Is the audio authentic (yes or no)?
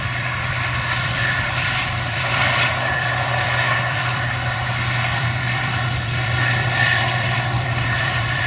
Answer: no